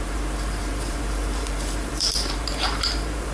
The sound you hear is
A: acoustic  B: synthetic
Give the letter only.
B